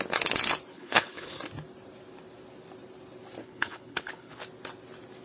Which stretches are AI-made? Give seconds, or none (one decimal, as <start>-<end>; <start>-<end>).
0.7-1.4; 3.4-4.4